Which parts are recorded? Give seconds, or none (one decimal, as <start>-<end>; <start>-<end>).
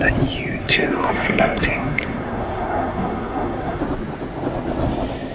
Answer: 0.0-0.6; 3.8-5.3